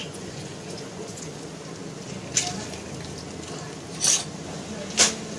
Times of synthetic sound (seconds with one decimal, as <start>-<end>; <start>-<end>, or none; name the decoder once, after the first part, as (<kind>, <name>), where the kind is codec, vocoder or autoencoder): 0.0-1.3 (vocoder, Vocos)